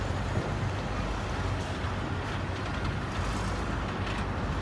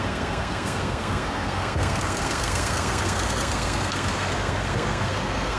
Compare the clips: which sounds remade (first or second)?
second